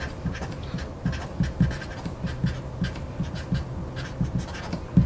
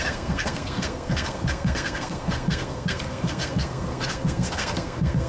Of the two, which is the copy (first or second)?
second